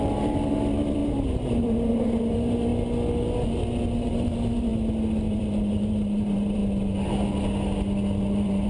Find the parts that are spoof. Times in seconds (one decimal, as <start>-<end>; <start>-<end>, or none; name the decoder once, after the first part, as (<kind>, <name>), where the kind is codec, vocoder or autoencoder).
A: 0.0-2.7 (vocoder, BigVGAN v2); 4.0-4.7; 5.3-6.6; 8.2-8.7